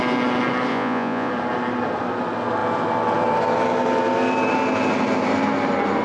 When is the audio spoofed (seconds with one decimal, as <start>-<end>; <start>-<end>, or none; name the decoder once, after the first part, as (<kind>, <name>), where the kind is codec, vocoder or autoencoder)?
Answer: 0.7-1.3 (vocoder, Vocos)